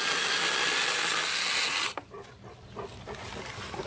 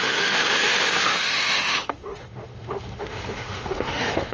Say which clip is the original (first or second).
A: first